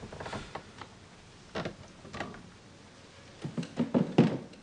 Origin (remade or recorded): recorded